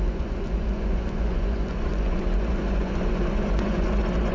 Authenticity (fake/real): fake